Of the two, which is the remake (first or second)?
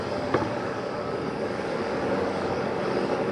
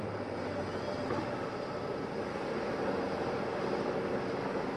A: first